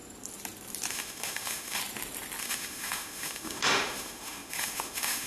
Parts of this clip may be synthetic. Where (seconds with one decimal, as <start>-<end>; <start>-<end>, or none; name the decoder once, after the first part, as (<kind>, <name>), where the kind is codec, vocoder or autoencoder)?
0.9-1.8 (autoencoder, DAC-VAE); 2.4-5.3

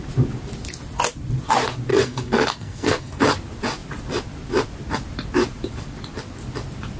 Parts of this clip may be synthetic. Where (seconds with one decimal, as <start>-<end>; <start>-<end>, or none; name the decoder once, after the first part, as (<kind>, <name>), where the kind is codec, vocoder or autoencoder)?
1.9-3.2 (codec, SNAC)

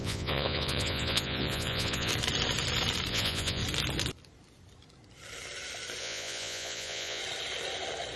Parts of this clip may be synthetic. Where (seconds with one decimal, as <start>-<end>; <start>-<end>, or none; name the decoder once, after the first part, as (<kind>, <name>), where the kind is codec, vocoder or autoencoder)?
0.0-2.1 (vocoder, Vocos); 3.1-3.6; 6.0-7.2

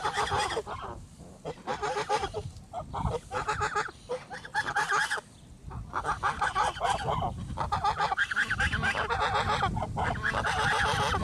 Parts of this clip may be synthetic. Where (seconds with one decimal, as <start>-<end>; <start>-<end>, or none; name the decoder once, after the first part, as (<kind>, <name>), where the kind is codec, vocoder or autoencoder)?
0.0-2.7 (vocoder, BigVGAN v2)

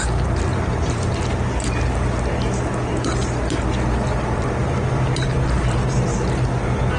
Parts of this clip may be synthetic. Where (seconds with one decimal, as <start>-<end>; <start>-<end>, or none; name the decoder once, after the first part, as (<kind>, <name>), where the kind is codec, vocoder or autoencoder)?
0.5-1.1 (vocoder, BigVGAN v2)

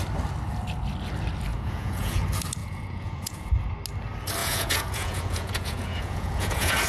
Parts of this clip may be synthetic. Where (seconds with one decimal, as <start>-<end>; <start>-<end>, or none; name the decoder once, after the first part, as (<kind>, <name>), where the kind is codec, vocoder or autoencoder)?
1.5-2.2 (vocoder, Vocos); 2.6-3.5; 4.4-6.9

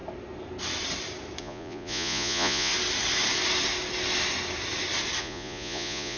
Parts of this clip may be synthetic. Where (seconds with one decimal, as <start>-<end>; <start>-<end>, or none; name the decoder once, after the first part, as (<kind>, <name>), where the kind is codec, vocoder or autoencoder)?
1.4-2.7 (vocoder, Vocos); 5.2-6.2

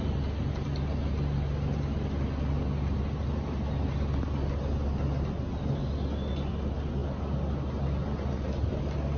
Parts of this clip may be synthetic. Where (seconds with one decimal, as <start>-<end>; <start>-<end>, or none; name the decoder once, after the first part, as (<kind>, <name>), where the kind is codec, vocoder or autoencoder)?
none